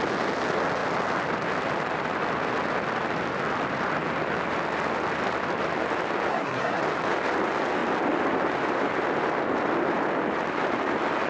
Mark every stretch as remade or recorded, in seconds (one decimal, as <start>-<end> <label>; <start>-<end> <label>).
0.0-6.3 recorded; 6.3-6.8 remade; 6.8-11.3 recorded